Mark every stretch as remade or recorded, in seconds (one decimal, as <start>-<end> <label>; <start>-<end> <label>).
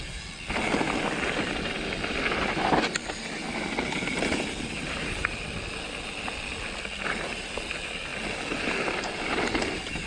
0.0-10.1 recorded